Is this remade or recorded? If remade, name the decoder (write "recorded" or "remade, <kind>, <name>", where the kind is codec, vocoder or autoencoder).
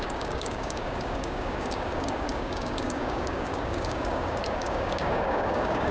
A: remade, codec, DAC